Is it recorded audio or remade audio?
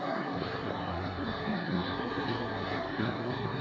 remade